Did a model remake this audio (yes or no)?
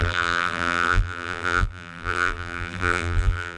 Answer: yes